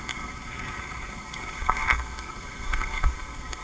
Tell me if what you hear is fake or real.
fake